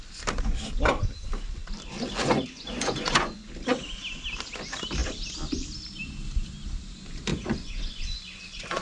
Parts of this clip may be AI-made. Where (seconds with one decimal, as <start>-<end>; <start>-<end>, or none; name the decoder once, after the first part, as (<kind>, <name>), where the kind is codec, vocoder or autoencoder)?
2.2-3.5 (vocoder, Vocos); 7.3-8.8